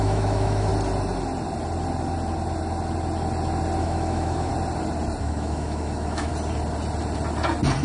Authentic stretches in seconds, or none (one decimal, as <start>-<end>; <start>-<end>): 0.7-3.8; 4.5-5.2; 6.3-7.8

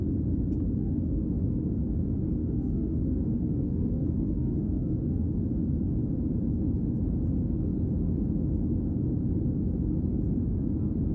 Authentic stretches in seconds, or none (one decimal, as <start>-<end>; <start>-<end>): 0.0-0.8; 1.8-2.4; 5.4-11.1

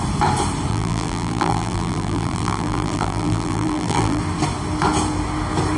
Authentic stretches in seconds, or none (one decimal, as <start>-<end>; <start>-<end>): 0.0-0.7; 4.2-5.8

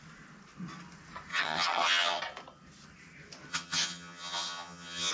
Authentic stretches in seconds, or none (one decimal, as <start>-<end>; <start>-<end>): 0.0-1.3; 2.2-3.5

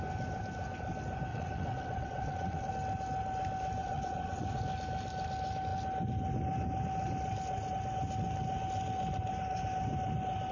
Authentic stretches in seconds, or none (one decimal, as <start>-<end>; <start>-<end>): 0.0-1.3; 2.7-3.8; 4.6-10.5

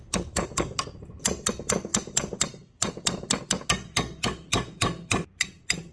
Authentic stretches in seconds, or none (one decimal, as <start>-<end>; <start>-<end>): 0.0-5.9

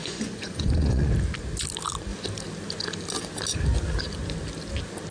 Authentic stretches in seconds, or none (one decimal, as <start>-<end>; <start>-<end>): 1.1-5.1

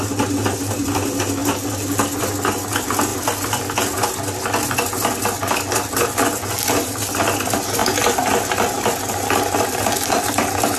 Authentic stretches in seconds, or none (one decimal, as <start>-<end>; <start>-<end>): 0.0-10.8